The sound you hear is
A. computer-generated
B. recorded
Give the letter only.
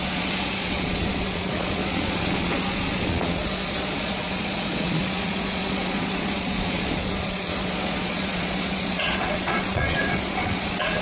A